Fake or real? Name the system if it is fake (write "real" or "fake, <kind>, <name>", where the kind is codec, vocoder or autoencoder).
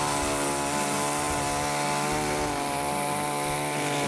real